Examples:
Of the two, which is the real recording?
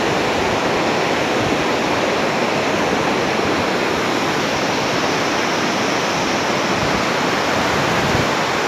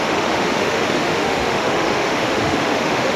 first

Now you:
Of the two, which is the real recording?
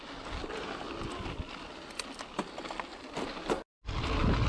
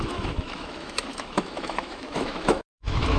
first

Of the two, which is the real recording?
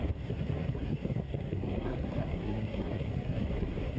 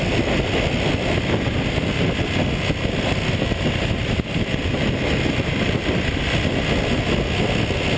second